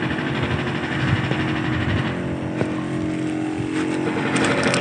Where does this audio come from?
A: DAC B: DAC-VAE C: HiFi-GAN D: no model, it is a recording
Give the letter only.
D